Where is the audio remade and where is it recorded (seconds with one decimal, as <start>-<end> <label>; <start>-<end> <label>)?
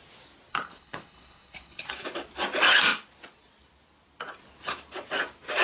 0.0-0.5 recorded; 0.5-1.9 remade; 1.9-5.6 recorded